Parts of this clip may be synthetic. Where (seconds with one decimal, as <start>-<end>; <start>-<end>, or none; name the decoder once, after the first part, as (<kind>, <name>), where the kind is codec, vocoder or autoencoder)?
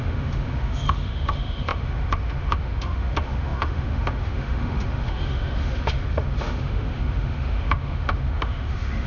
0.0-9.1 (autoencoder, DAC-VAE)